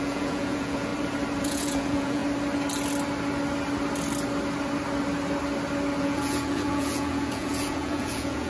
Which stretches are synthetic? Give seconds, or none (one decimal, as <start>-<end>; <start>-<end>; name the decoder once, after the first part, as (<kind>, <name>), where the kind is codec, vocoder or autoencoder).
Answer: 0.0-0.9 (vocoder, Vocos); 1.4-2.2; 6.0-8.5